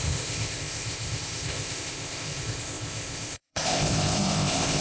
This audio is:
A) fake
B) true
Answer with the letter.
A